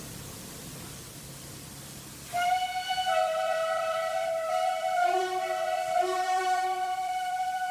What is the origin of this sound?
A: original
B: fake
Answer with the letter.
B